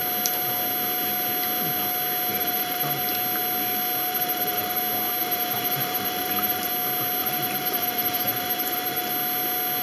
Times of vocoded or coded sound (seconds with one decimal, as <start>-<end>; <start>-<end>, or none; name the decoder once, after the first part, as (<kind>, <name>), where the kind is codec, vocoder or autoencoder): 2.3-3.0 (vocoder, BigVGAN v2); 4.1-4.8; 5.2-6.7; 7.2-9.1